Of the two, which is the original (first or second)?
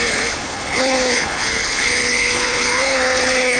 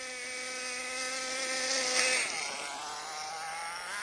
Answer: second